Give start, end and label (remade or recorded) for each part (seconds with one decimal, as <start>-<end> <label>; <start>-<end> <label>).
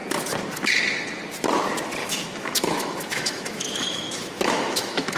0.0-2.0 recorded; 2.0-5.2 remade